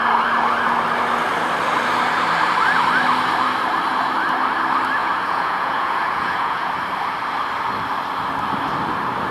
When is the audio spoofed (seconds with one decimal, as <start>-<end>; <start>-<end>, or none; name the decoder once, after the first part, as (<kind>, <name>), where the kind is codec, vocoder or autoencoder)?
5.0-6.7 (vocoder, Vocos)